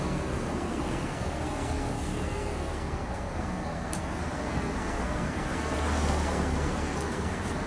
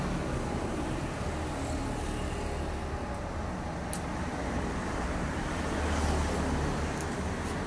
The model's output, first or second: first